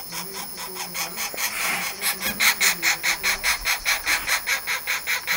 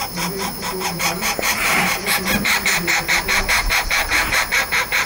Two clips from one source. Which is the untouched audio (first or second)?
first